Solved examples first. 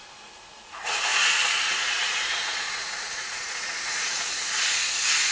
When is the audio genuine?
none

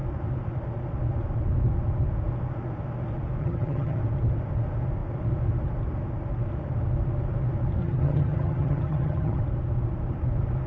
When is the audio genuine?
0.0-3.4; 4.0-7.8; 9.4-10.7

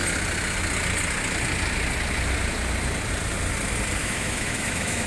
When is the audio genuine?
0.0-4.0